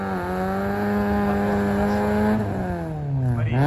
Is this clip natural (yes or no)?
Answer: yes